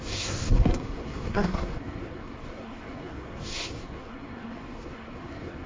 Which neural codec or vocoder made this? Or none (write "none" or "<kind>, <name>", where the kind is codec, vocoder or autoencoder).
codec, SNAC